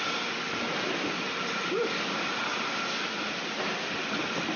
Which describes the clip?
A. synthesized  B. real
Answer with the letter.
B